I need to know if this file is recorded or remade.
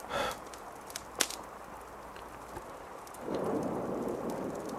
recorded